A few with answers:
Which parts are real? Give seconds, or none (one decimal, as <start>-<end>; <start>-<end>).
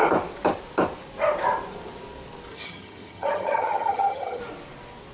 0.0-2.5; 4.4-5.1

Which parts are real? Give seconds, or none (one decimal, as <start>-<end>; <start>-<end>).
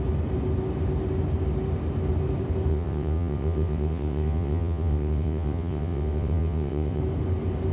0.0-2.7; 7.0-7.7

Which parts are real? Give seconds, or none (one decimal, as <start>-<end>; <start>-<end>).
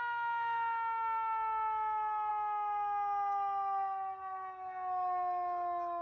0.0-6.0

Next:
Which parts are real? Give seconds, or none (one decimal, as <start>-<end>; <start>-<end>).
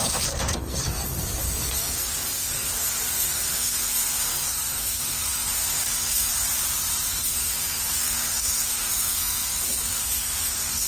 6.3-7.1